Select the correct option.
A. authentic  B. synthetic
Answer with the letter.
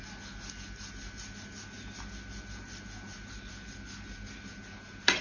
A